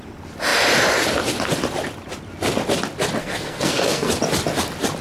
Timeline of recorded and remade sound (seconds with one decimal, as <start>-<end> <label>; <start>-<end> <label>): 0.0-3.2 recorded; 3.2-4.1 remade; 4.1-5.0 recorded